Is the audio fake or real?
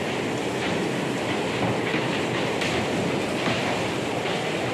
real